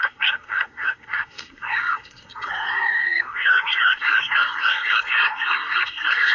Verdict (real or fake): fake